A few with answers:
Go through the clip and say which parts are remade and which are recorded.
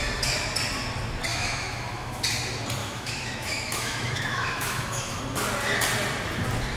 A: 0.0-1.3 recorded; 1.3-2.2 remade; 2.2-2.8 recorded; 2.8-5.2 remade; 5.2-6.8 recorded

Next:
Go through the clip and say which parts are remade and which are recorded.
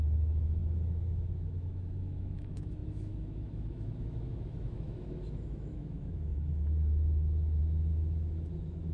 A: 0.0-8.9 remade